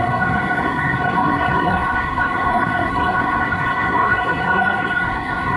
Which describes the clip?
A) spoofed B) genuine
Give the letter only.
A